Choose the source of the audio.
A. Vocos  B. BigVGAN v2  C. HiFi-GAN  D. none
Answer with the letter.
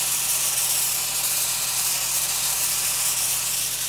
D